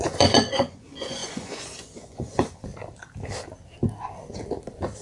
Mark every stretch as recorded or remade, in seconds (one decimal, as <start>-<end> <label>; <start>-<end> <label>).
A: 0.0-2.7 remade; 2.7-5.0 recorded